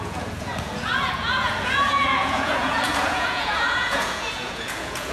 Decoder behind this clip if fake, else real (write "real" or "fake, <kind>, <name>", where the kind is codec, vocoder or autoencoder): fake, vocoder, Vocos